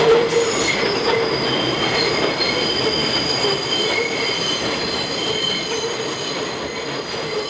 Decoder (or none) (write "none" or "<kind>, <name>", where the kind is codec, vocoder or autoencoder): none